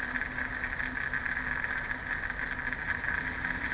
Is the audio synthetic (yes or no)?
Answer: no